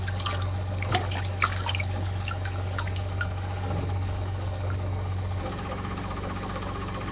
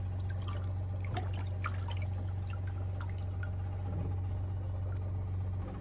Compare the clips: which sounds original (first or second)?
second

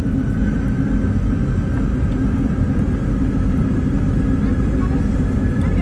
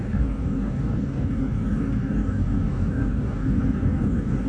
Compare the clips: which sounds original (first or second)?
first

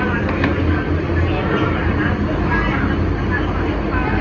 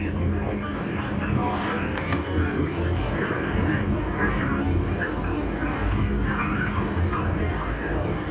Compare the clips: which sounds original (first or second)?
first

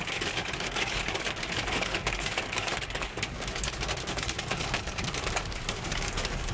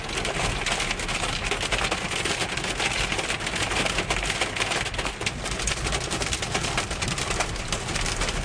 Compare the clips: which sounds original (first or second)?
second